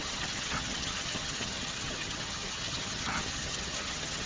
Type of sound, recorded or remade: remade